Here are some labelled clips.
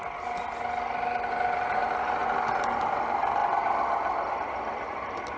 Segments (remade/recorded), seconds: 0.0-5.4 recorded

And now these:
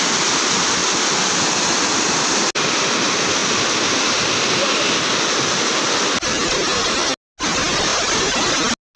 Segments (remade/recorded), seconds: 0.0-9.0 recorded

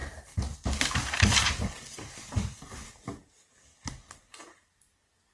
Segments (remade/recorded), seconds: 0.0-5.3 recorded

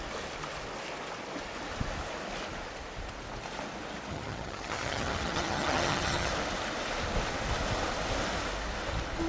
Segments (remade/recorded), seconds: 0.0-4.1 recorded; 4.1-6.3 remade; 6.3-9.3 recorded

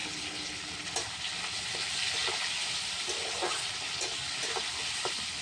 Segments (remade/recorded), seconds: 0.0-0.6 remade; 0.6-5.4 recorded

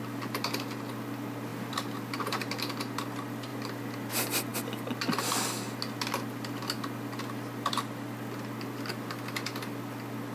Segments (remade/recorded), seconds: 0.0-1.5 recorded; 1.5-2.4 remade; 2.4-10.3 recorded

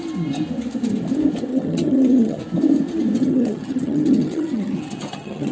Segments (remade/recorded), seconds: 0.0-1.5 recorded; 1.5-2.4 remade; 2.4-3.2 recorded; 3.2-5.5 remade